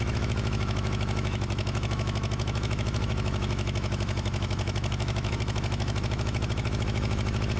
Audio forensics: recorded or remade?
remade